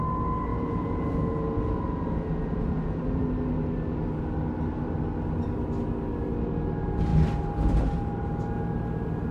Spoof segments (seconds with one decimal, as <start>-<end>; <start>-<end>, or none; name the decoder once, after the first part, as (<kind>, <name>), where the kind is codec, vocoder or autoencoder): 0.5-3.2 (vocoder, Vocos)